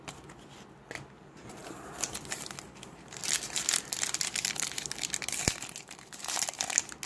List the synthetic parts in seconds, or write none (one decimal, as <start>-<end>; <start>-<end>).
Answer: 1.6-2.2; 3.2-6.3